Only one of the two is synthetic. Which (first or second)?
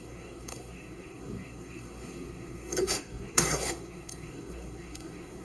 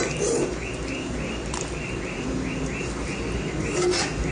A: first